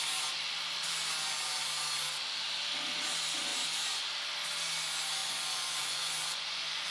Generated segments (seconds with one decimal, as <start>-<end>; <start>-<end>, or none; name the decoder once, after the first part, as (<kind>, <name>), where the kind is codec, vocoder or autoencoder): 5.2-6.9 (vocoder, Vocos)